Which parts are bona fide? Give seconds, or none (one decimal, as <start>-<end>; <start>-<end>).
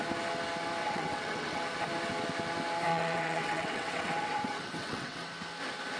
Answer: 0.0-0.8; 1.6-2.9; 5.3-6.0